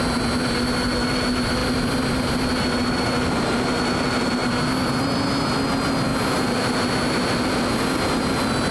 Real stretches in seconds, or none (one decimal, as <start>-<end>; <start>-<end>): 0.0-8.7